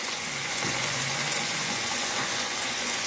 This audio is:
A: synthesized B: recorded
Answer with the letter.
A